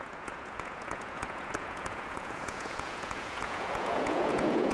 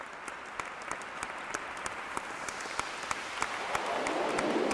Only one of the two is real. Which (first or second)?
second